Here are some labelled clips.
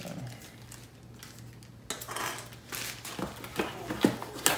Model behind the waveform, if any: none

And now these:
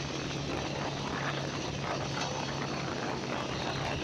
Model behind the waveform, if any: none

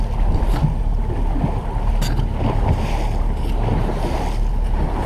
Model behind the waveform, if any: none